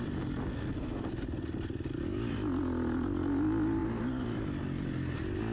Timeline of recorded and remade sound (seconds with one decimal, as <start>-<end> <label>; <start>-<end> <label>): 0.0-0.5 recorded; 0.5-1.1 remade; 1.1-5.5 recorded